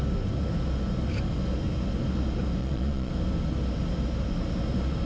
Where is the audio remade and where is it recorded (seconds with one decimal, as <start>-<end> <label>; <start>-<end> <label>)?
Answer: 0.0-2.6 recorded; 2.6-3.1 remade; 3.1-5.1 recorded